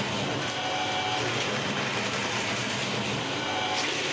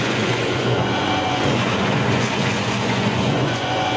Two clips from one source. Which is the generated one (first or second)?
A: second